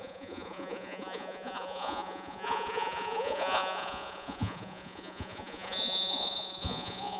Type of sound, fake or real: fake